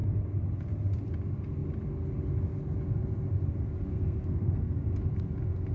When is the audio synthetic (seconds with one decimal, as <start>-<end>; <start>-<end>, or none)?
3.9-4.8